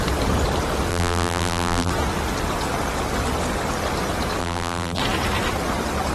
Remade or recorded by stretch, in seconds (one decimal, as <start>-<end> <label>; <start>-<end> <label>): 0.0-0.9 recorded; 0.9-1.9 remade; 1.9-4.4 recorded; 4.4-5.0 remade; 5.0-6.1 recorded